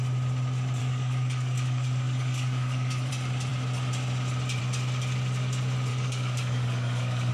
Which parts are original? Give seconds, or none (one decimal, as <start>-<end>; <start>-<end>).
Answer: 0.0-0.8; 3.1-5.9